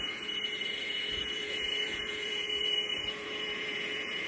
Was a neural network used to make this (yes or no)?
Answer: yes